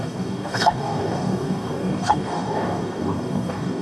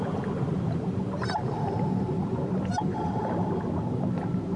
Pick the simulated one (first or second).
first